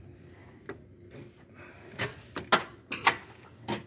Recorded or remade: recorded